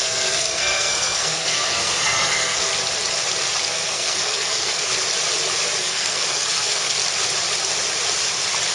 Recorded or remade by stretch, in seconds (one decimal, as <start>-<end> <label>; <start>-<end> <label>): 0.0-2.7 remade; 2.7-3.6 recorded; 3.6-4.9 remade; 4.9-5.8 recorded; 5.8-7.0 remade; 7.0-8.7 recorded

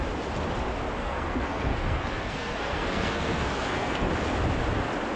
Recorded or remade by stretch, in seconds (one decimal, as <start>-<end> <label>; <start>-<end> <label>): 0.0-1.0 recorded; 1.0-4.1 remade; 4.1-5.2 recorded

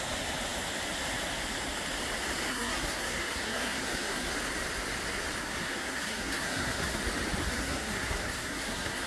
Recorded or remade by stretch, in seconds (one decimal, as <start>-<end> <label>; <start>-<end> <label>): 0.0-2.5 recorded; 2.5-4.3 remade; 4.3-5.4 recorded; 5.4-7.0 remade; 7.0-7.4 recorded; 7.4-9.1 remade

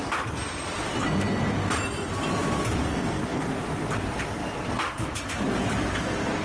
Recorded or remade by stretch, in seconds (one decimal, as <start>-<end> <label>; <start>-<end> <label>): 0.0-2.8 recorded; 2.8-3.5 remade; 3.5-6.4 recorded